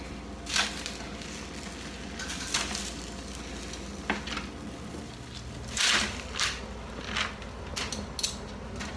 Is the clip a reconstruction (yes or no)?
no